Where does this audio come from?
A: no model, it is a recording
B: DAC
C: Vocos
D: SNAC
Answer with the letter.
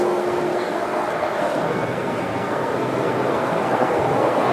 D